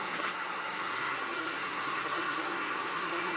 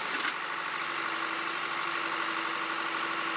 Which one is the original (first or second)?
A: second